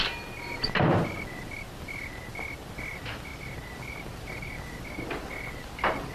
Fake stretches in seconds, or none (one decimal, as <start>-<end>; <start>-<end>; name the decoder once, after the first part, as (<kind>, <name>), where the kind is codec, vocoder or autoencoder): 3.3-6.1 (vocoder, BigVGAN v2)